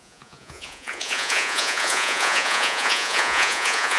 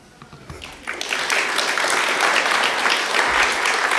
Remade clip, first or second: first